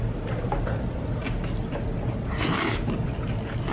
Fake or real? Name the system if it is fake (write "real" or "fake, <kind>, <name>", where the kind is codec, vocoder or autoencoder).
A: real